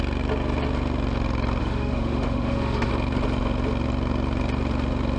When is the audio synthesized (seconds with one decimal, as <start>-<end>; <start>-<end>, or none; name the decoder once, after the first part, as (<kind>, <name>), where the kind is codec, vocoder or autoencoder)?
1.6-2.9 (autoencoder, DAC-VAE)